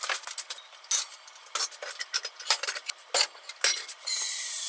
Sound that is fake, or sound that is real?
real